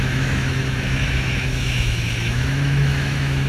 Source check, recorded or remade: remade